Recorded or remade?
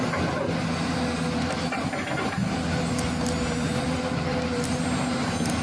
recorded